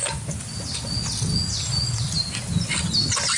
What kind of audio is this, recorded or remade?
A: recorded